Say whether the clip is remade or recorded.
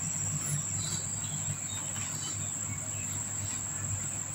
recorded